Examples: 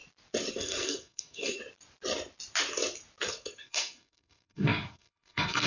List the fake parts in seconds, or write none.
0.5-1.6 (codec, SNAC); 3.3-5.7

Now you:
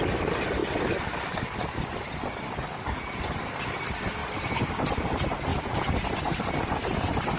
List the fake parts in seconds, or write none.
none